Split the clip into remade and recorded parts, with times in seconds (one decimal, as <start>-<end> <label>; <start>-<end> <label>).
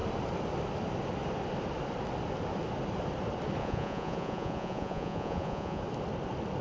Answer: 0.0-3.6 recorded; 3.6-5.8 remade; 5.8-6.6 recorded